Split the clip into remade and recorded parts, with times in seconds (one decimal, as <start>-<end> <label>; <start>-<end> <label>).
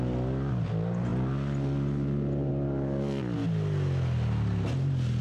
0.0-5.2 recorded